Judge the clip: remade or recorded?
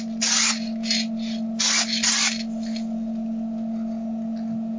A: recorded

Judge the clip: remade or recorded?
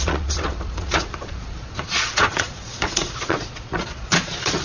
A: remade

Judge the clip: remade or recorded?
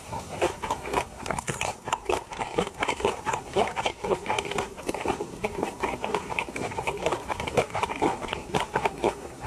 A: remade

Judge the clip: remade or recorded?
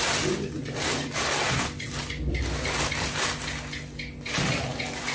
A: recorded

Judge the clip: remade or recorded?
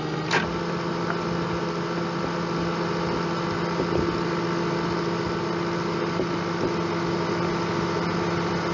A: recorded